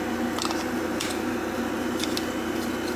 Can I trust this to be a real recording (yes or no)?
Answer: yes